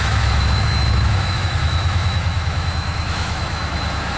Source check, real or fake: fake